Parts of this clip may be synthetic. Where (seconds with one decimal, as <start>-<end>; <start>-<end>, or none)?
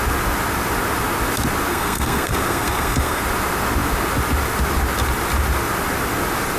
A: 1.7-3.2